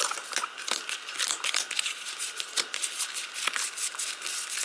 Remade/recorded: recorded